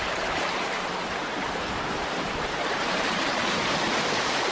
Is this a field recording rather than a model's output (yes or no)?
no